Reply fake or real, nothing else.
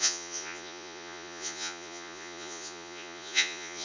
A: fake